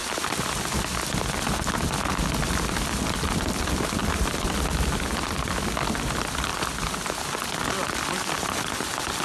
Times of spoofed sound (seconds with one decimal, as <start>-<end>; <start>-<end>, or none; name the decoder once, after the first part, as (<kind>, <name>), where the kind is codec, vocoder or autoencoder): none